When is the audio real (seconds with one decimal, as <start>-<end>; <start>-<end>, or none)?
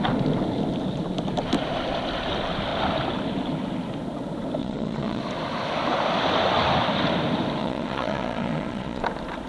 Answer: 0.0-4.6; 5.2-7.6; 9.0-9.5